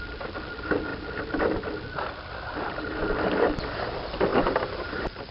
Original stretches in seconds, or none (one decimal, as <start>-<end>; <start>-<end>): 0.0-0.9; 3.9-4.3